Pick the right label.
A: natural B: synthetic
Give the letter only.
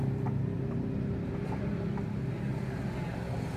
A